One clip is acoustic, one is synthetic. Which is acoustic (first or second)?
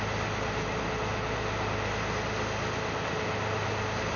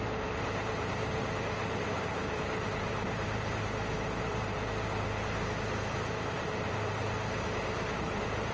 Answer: first